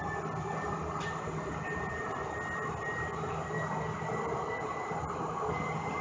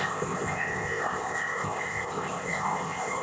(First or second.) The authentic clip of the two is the first